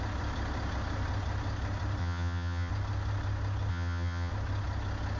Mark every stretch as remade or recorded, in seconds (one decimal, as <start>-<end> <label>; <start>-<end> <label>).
0.0-2.0 recorded; 2.0-2.7 remade; 2.7-3.7 recorded; 3.7-4.3 remade; 4.3-5.2 recorded

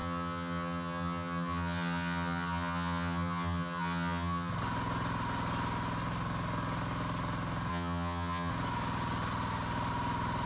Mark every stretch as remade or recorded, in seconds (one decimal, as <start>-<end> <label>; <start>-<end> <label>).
0.0-4.5 remade; 4.5-7.7 recorded; 7.7-8.5 remade; 8.5-10.5 recorded

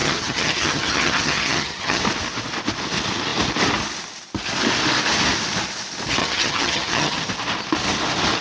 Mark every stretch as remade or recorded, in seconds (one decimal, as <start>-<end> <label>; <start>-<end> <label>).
0.0-2.0 remade; 2.0-6.2 recorded; 6.2-7.3 remade; 7.3-8.4 recorded

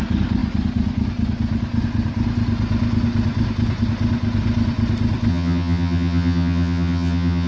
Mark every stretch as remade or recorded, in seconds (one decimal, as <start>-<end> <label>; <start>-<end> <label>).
0.0-5.3 recorded; 5.3-7.5 remade

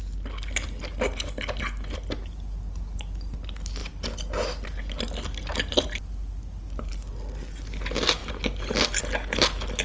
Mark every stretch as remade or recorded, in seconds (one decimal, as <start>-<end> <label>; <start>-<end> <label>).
0.0-9.8 recorded

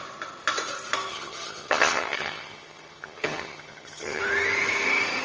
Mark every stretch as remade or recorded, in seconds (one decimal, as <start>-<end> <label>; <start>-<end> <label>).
0.0-1.1 recorded; 1.1-4.2 remade; 4.2-5.2 recorded

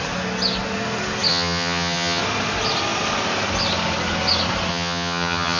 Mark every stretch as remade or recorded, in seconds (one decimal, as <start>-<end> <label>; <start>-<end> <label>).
0.0-1.3 recorded; 1.3-2.2 remade; 2.2-4.7 recorded; 4.7-5.6 remade